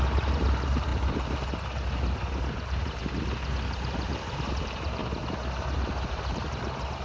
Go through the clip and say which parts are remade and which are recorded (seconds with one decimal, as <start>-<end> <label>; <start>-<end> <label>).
0.0-0.9 remade; 0.9-2.5 recorded; 2.5-3.0 remade; 3.0-4.6 recorded; 4.6-5.0 remade; 5.0-6.1 recorded; 6.1-7.0 remade